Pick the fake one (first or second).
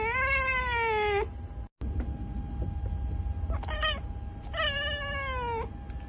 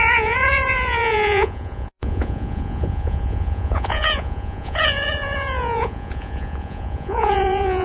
second